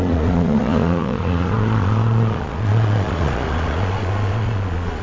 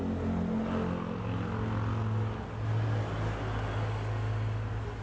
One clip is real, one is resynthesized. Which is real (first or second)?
second